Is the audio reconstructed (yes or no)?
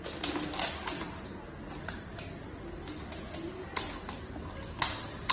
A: no